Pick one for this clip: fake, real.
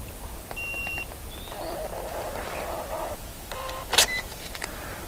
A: fake